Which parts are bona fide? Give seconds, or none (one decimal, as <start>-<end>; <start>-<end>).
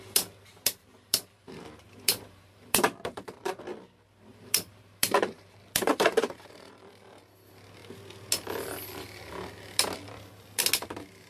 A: 0.0-0.8; 3.6-4.3; 7.2-11.3